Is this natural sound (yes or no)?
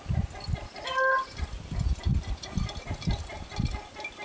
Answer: yes